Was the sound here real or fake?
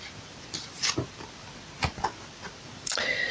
real